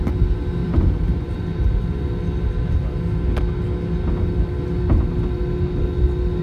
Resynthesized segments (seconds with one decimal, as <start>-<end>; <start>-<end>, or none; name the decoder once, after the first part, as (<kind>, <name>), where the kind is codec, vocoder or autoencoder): 0.6-1.8 (vocoder, BigVGAN v2)